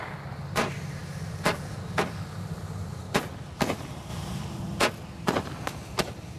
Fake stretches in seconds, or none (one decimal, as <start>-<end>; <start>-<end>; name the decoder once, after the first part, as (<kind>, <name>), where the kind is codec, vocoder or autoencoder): none